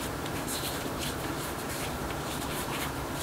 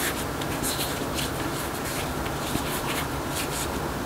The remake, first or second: first